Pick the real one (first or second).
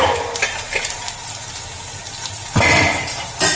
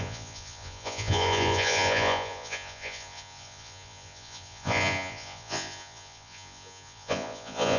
first